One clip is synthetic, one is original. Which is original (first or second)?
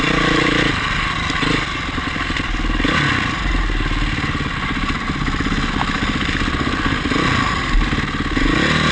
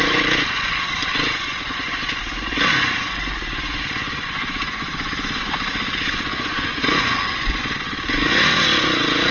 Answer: first